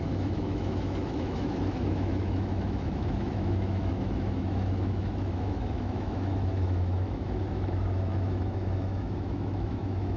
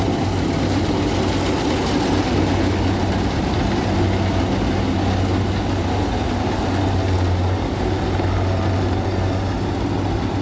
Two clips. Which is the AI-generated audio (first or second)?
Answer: first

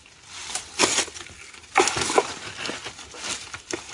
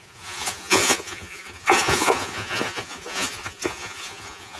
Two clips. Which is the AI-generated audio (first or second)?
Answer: second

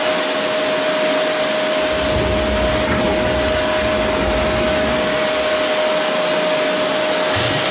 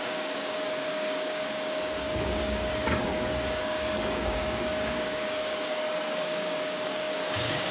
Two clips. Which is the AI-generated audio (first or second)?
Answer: second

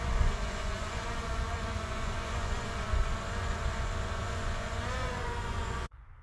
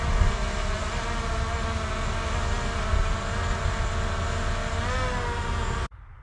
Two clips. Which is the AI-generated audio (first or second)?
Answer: first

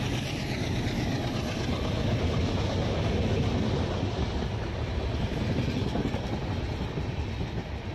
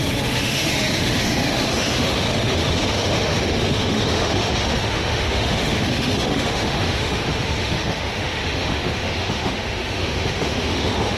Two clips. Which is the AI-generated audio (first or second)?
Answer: second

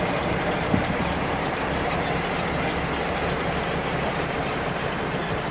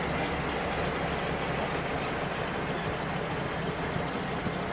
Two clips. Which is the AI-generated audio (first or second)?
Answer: first